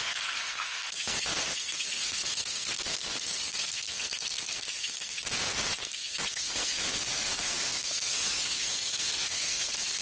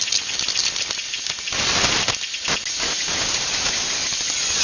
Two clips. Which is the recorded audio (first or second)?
second